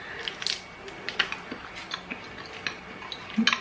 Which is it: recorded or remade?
recorded